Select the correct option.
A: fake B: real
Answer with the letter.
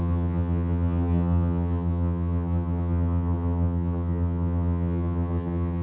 A